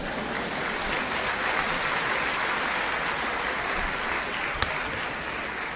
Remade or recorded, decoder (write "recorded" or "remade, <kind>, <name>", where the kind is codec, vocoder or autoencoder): recorded